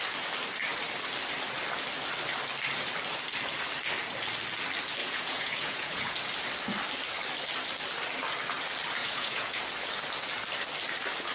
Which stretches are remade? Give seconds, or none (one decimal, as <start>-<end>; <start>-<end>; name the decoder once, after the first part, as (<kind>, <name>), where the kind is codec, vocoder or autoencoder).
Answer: 5.0-6.1 (vocoder, Vocos); 9.0-9.6